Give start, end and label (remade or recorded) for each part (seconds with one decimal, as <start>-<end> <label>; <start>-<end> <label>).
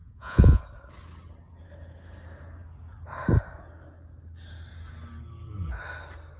0.0-0.6 remade; 0.6-6.4 recorded